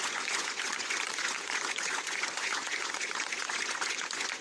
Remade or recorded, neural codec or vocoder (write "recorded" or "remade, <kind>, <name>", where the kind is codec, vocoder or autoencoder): remade, vocoder, Vocos